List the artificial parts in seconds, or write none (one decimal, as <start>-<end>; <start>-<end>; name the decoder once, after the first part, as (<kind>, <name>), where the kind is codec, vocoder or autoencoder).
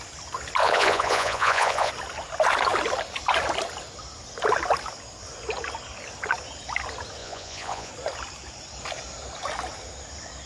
0.6-1.9 (vocoder, Vocos); 7.2-7.9